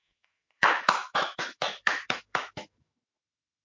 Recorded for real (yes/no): no